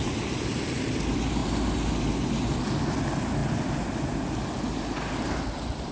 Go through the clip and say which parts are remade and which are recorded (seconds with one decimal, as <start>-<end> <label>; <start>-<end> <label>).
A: 0.0-5.9 recorded